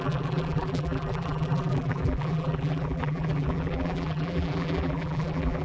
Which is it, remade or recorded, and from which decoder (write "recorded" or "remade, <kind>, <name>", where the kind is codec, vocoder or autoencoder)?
remade, vocoder, BigVGAN v2